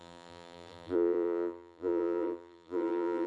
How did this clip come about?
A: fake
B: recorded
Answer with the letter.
A